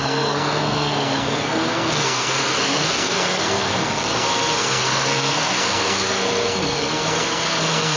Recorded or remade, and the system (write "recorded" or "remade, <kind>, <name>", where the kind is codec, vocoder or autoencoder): remade, codec, SNAC